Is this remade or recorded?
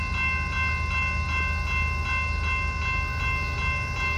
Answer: recorded